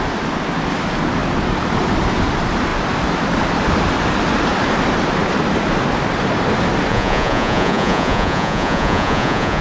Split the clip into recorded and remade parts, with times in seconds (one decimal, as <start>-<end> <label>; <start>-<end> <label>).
0.0-6.9 recorded; 6.9-9.6 remade